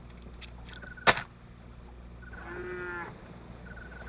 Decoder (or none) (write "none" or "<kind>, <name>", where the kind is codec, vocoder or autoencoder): none